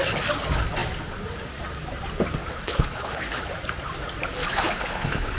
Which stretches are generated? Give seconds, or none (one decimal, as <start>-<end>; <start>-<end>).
2.4-3.4; 4.4-5.4